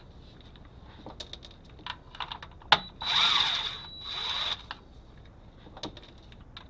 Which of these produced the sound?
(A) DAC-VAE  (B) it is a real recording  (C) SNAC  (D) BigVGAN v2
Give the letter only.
B